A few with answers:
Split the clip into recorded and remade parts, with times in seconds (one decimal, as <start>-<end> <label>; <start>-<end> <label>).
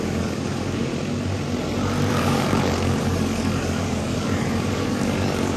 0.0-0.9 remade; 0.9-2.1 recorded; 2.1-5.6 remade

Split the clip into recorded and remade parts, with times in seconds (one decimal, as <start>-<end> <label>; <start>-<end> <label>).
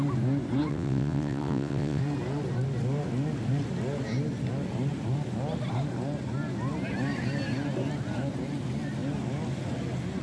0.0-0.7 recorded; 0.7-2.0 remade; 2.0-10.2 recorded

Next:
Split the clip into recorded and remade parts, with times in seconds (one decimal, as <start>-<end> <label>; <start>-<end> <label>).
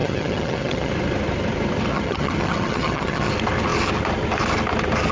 0.0-0.9 remade; 0.9-1.9 recorded; 1.9-3.3 remade; 3.3-5.1 recorded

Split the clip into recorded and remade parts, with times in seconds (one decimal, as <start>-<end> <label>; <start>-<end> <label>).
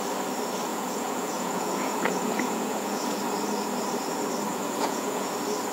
0.0-0.7 recorded; 0.7-3.2 remade; 3.2-4.5 recorded; 4.5-5.3 remade; 5.3-5.7 recorded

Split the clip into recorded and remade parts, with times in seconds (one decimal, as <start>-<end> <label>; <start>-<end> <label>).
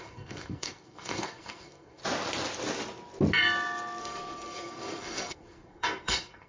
0.0-2.0 remade; 2.0-4.0 recorded; 4.0-6.5 remade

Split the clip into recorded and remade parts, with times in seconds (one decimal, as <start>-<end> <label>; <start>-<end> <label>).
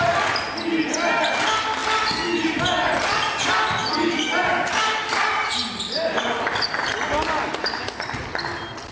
0.0-8.9 recorded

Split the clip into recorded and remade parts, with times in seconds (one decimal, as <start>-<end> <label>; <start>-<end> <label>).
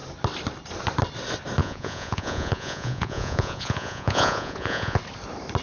0.0-1.6 recorded; 1.6-5.0 remade; 5.0-5.6 recorded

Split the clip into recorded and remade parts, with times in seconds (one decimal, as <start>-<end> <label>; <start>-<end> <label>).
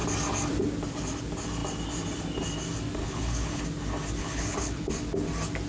0.0-3.0 recorded; 3.0-3.6 remade; 3.6-4.2 recorded; 4.2-4.9 remade; 4.9-5.7 recorded